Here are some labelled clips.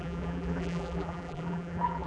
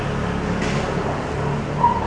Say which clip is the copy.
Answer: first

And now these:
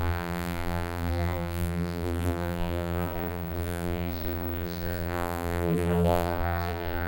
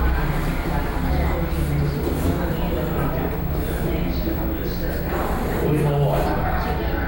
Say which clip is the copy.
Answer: first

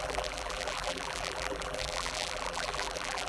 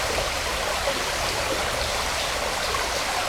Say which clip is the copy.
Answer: first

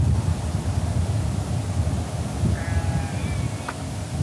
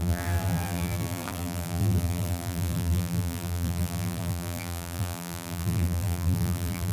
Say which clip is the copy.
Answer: second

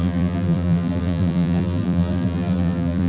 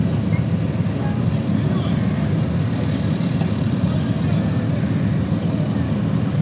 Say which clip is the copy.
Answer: first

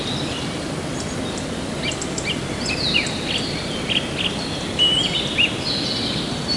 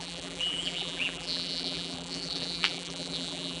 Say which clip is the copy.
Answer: second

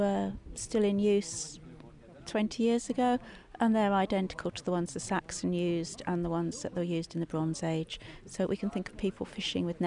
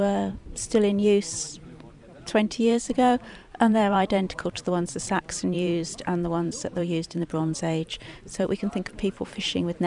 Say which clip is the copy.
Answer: second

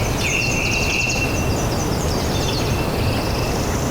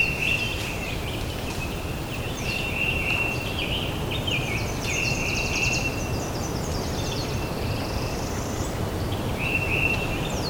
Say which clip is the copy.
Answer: second